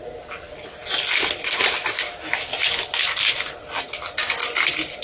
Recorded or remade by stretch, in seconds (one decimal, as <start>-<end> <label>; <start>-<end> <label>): 0.0-5.0 recorded